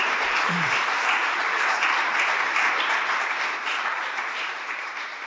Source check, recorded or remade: remade